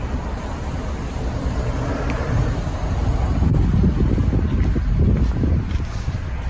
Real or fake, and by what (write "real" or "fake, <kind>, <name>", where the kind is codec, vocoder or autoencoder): real